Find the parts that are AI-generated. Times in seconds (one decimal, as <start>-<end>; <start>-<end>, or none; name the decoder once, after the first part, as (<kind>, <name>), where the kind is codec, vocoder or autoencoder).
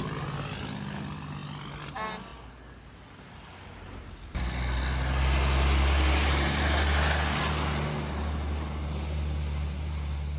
none